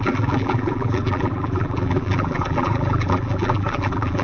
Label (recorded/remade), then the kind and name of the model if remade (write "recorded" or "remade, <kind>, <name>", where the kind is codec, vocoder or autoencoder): remade, vocoder, BigVGAN v2